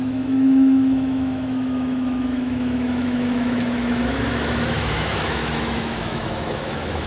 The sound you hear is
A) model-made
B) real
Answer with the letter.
A